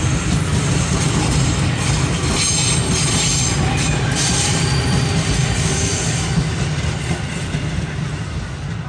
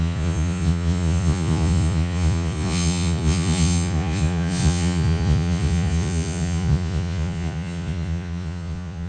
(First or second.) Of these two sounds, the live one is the first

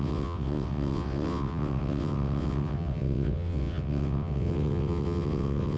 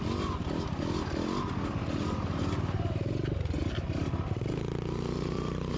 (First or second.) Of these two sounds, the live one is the second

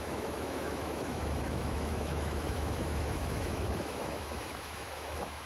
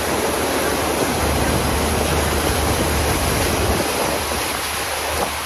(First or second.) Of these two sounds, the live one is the second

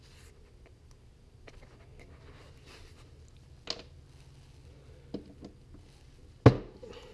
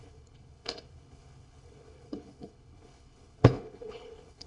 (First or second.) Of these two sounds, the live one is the first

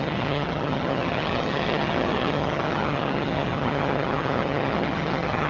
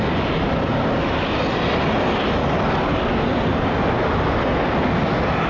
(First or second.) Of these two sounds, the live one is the second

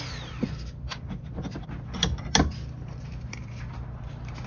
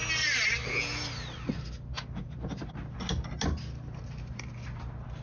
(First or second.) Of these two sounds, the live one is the second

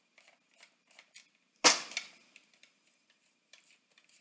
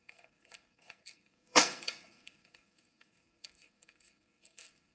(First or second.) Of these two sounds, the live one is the first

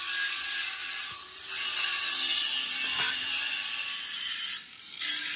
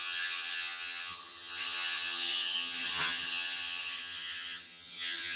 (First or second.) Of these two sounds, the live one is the first